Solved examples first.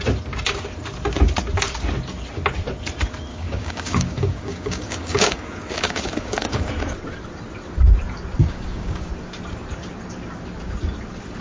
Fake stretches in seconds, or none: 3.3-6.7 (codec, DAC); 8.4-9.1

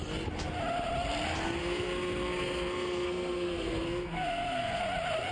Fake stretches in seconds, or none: 1.6-4.8 (codec, SNAC)

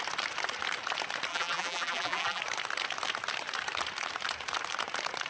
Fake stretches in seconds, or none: 1.3-2.4 (vocoder, BigVGAN v2)

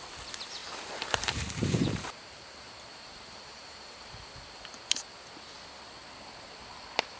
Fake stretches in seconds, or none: 0.6-4.0 (vocoder, BigVGAN v2); 6.0-6.6

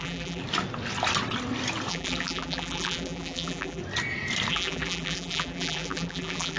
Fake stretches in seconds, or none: 0.0-0.4 (vocoder, BigVGAN v2); 1.9-3.8; 4.5-6.6